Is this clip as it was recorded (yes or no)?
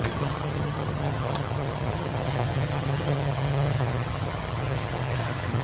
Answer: no